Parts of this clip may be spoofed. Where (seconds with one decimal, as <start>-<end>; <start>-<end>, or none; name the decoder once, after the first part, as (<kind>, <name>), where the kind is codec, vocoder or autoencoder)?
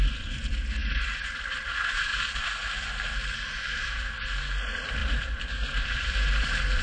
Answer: 2.1-4.2 (vocoder, BigVGAN v2); 5.0-6.8